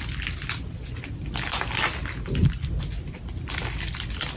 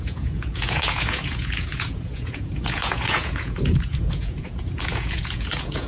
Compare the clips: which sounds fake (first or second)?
second